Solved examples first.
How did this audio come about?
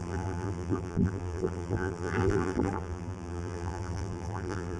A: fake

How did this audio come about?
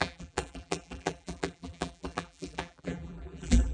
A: fake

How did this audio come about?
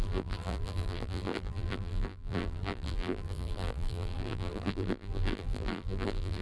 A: fake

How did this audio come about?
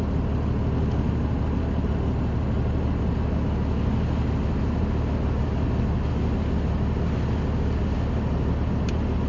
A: real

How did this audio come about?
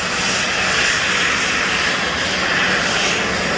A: real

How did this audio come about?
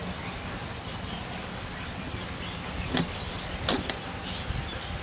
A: real